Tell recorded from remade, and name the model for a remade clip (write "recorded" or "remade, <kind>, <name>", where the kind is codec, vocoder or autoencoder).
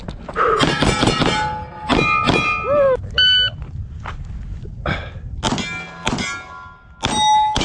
recorded